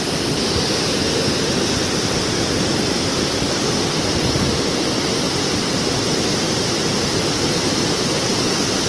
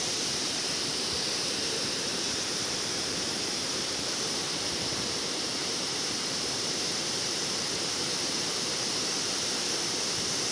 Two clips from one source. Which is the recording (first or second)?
first